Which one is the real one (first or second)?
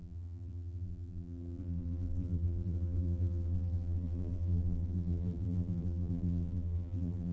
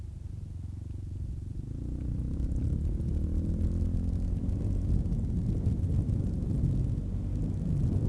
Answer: second